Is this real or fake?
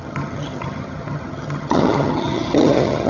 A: fake